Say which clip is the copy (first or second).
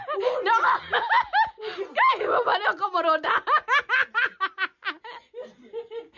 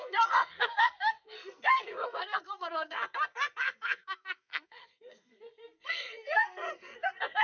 second